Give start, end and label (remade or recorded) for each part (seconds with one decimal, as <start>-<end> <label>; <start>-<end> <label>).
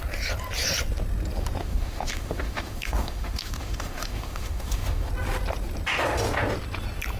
0.0-1.6 recorded; 1.6-5.1 remade; 5.1-7.2 recorded